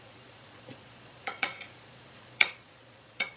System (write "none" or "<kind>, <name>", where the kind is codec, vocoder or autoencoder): vocoder, Vocos